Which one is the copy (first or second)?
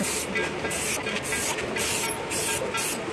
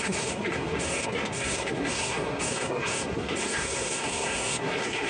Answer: second